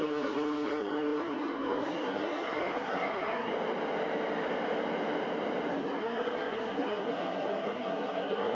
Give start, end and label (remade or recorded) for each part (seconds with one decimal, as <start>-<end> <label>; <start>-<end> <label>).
0.0-3.5 remade; 3.5-5.7 recorded; 5.7-8.5 remade